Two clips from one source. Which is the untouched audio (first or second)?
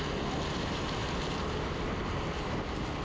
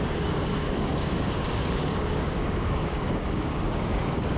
first